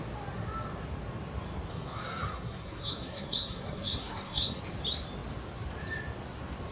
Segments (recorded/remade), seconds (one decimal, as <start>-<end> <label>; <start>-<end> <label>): 0.0-1.7 recorded; 1.7-4.6 remade; 4.6-6.7 recorded